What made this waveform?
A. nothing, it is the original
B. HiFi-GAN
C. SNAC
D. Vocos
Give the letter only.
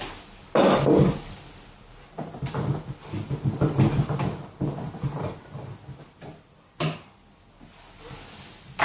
A